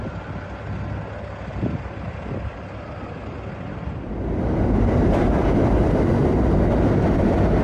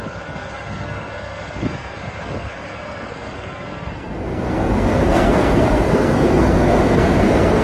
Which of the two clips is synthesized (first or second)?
second